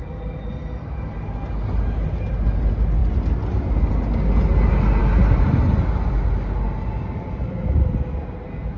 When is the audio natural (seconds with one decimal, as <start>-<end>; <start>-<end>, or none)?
0.0-8.8